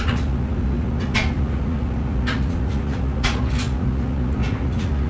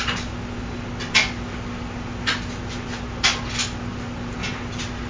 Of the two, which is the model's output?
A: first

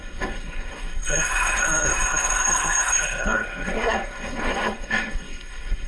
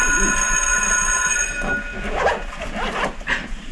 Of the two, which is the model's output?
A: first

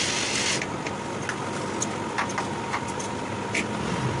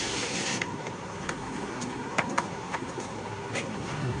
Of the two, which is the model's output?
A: second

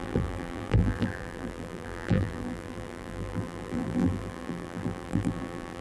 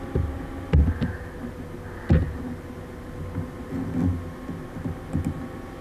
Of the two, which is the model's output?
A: first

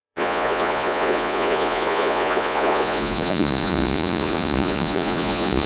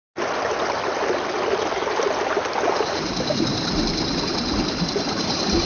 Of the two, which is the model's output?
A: first